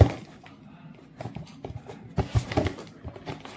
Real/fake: real